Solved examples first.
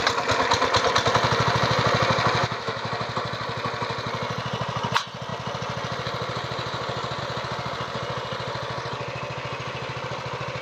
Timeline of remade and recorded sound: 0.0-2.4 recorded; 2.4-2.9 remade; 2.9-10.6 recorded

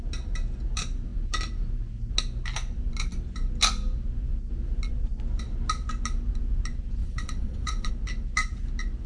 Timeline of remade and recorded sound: 0.0-7.0 recorded; 7.0-7.9 remade; 7.9-9.1 recorded

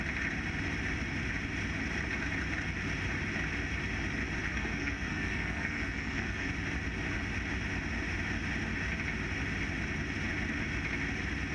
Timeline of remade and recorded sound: 0.0-4.4 recorded; 4.4-6.5 remade; 6.5-11.5 recorded

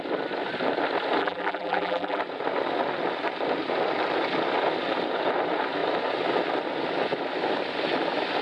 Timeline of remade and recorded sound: 0.0-1.2 recorded; 1.2-2.2 remade; 2.2-8.4 recorded

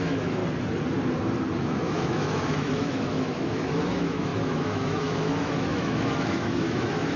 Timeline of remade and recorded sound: 0.0-0.4 remade; 0.4-1.6 recorded; 1.6-7.2 remade

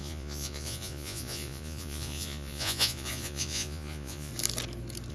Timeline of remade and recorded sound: 0.0-4.3 remade; 4.3-5.1 recorded

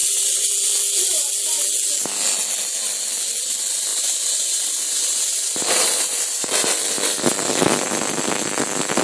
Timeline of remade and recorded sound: 0.0-0.5 remade; 0.5-3.9 recorded; 3.9-8.0 remade; 8.0-9.0 recorded